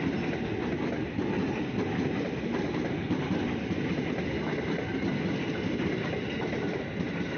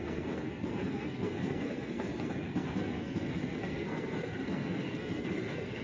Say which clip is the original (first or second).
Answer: first